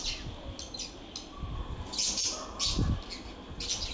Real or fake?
real